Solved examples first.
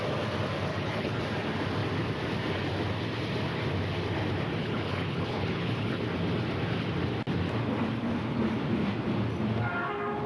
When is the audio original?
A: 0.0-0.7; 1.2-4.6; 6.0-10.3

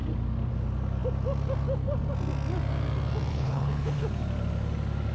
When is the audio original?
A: 0.0-3.3; 4.0-5.1

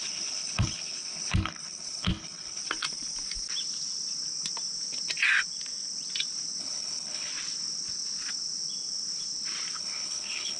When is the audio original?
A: 2.6-6.6; 7.3-9.8

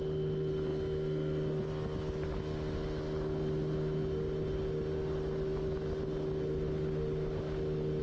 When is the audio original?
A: 0.0-8.0

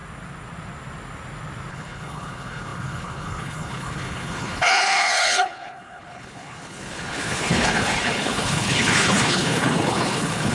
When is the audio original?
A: 0.0-1.7

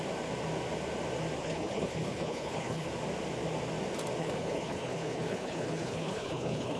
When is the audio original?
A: 0.0-1.4; 2.9-4.2